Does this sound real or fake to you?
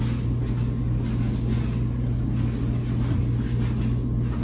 real